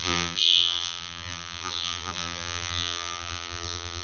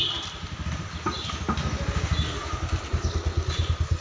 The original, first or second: second